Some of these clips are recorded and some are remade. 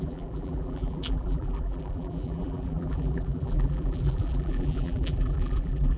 remade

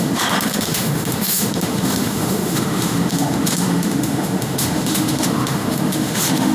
remade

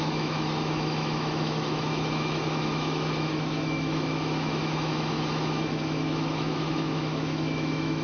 remade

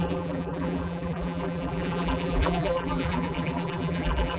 remade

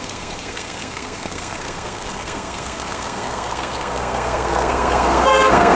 remade